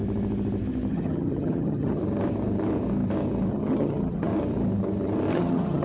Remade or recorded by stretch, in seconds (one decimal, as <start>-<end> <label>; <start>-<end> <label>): 0.0-0.9 recorded; 0.9-2.0 remade; 2.0-3.5 recorded; 3.5-4.3 remade; 4.3-5.3 recorded; 5.3-5.8 remade

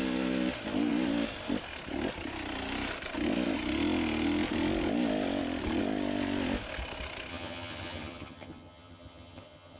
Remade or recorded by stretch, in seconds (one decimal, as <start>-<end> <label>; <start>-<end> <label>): 0.0-7.3 recorded; 7.3-9.8 remade

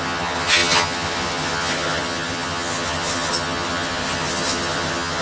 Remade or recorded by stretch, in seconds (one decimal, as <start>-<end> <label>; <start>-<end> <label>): 0.0-5.2 remade

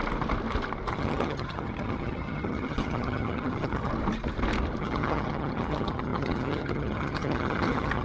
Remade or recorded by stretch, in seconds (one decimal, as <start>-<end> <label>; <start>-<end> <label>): 0.0-0.9 recorded; 0.9-3.9 remade; 3.9-4.8 recorded; 4.8-8.0 remade

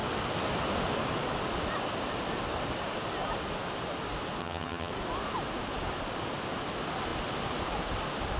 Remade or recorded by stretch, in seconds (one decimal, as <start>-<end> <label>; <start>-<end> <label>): 0.0-4.4 recorded; 4.4-4.9 remade; 4.9-8.4 recorded

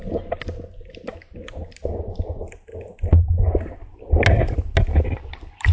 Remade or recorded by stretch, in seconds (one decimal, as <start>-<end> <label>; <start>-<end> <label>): 0.0-5.7 recorded